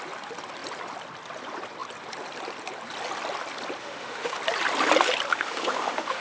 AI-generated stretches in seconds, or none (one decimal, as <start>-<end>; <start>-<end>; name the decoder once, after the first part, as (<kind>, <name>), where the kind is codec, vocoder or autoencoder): 3.8-4.4 (autoencoder, DAC-VAE); 5.3-6.2